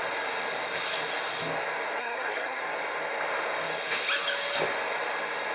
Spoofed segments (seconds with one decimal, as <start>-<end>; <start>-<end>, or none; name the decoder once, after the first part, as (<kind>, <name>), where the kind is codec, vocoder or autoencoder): 2.0-2.6 (codec, SNAC)